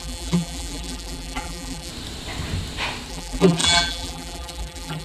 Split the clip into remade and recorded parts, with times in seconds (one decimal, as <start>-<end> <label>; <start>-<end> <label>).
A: 0.0-1.9 remade; 1.9-3.1 recorded; 3.1-5.0 remade